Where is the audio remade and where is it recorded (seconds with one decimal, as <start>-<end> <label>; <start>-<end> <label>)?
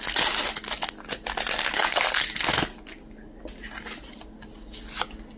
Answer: 0.0-5.4 recorded